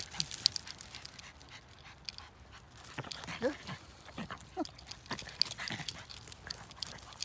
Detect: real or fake real